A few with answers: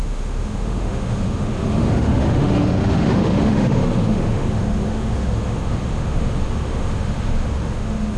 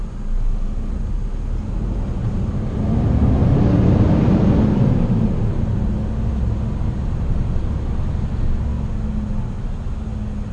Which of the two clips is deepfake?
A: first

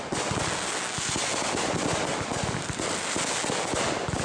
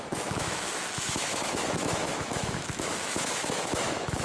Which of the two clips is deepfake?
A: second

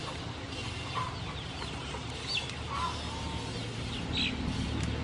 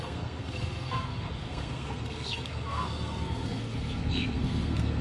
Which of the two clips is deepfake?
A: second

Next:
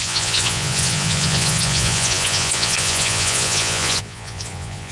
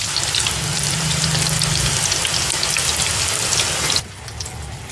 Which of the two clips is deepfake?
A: first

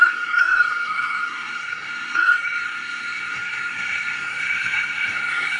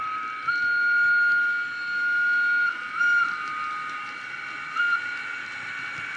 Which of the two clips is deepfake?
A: first